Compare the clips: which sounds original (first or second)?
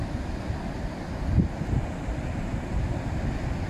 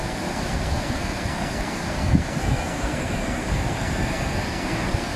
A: first